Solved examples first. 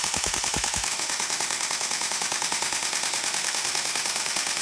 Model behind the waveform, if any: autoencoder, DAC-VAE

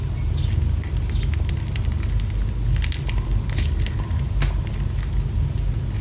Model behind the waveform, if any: none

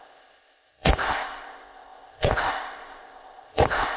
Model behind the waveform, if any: codec, ZipCodec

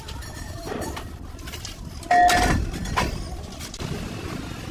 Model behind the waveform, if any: none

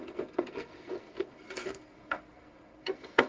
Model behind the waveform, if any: codec, SNAC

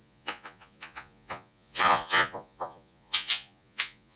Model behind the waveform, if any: vocoder, Vocos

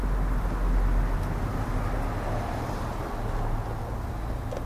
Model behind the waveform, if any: none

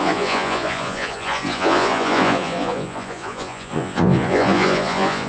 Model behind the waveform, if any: vocoder, Vocos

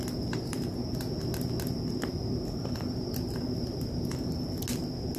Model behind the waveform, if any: none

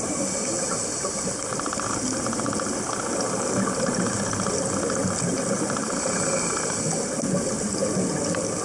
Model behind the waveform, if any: none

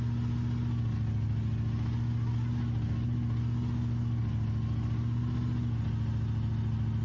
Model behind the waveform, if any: none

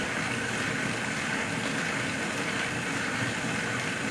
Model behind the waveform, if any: none